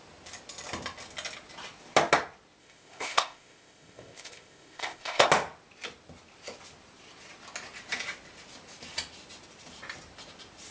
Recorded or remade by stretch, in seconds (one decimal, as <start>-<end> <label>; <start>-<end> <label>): 0.0-2.6 recorded; 2.6-5.3 remade; 5.3-10.7 recorded